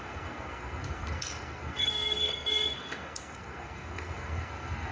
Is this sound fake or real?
fake